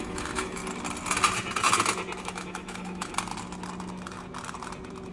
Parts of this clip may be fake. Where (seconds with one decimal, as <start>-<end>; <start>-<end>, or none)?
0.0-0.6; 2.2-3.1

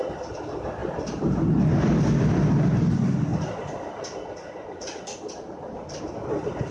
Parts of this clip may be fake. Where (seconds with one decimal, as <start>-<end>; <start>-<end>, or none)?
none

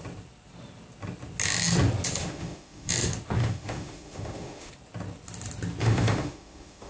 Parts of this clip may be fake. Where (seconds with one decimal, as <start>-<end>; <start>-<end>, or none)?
2.2-2.9; 3.4-4.7; 5.8-6.9

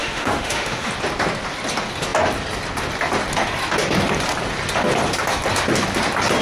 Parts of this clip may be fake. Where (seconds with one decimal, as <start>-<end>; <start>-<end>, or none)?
0.0-0.9

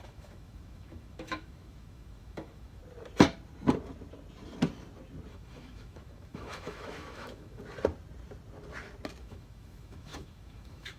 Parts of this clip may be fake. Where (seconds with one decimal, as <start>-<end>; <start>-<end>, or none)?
0.0-2.8; 5.3-7.6; 9.2-11.0